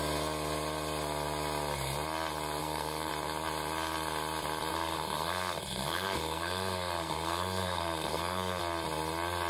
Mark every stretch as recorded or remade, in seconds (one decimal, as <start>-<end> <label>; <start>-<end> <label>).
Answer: 0.0-2.6 recorded; 2.6-3.1 remade; 3.1-4.7 recorded; 4.7-8.6 remade; 8.6-9.5 recorded